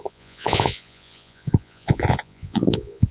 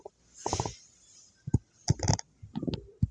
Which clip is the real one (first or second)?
second